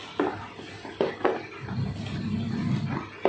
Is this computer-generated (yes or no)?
no